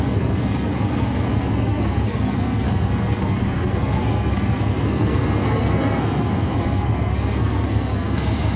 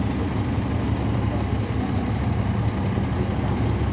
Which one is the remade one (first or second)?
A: first